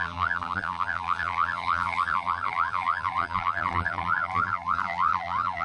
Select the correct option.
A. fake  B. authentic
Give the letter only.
A